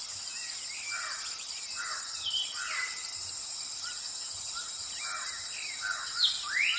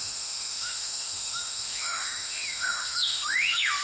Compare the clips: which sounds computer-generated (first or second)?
second